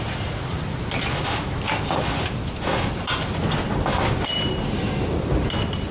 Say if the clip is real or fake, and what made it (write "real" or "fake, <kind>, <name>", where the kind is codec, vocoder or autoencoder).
real